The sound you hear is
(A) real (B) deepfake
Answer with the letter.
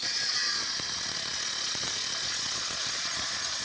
B